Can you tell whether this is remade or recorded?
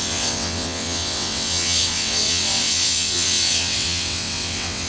remade